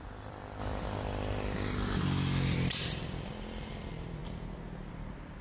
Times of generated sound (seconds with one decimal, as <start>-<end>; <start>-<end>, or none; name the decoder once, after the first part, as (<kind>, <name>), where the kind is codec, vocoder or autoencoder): 0.0-0.6 (vocoder, BigVGAN v2); 2.7-4.2; 4.9-5.4